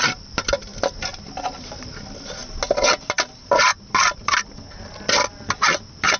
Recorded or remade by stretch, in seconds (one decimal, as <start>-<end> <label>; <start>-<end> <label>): 0.0-6.2 recorded

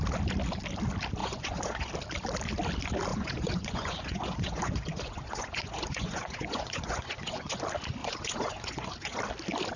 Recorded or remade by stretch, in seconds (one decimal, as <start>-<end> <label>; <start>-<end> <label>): 0.0-1.2 recorded; 1.2-1.9 remade; 1.9-3.1 recorded; 3.1-7.6 remade; 7.6-8.0 recorded; 8.0-9.2 remade; 9.2-9.8 recorded